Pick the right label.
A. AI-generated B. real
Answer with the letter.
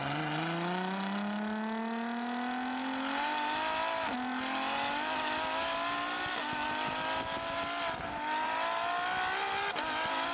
B